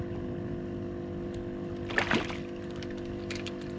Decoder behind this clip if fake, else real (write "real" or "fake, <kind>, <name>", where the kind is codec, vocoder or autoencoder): real